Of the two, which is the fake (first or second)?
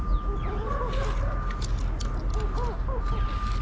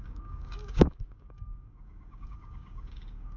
second